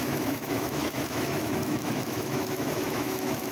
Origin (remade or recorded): remade